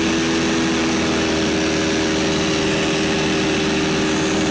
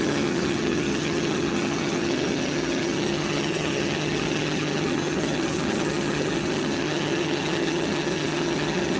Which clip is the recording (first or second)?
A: first